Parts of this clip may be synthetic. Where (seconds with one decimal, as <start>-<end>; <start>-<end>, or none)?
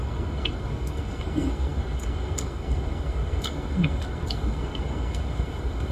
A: 0.0-5.9